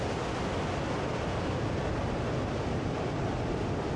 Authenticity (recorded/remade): recorded